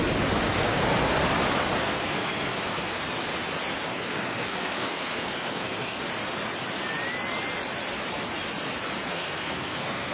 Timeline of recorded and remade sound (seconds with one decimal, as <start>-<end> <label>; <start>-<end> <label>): 0.0-1.8 recorded; 1.8-3.0 remade; 3.0-3.9 recorded; 3.9-6.0 remade; 6.0-9.1 recorded; 9.1-10.1 remade